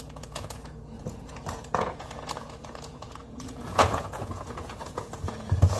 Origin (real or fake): fake